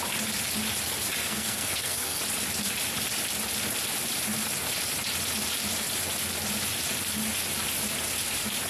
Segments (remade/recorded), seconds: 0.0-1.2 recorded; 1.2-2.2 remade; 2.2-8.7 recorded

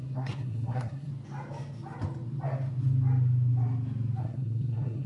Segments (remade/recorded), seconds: 0.0-1.1 remade; 1.1-4.2 recorded; 4.2-5.1 remade

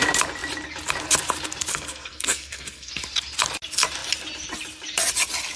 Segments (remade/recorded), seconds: 0.0-1.7 recorded; 1.7-2.9 remade; 2.9-5.6 recorded

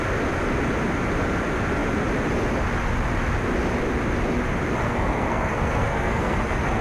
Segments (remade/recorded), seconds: 0.0-4.8 recorded; 4.8-6.8 remade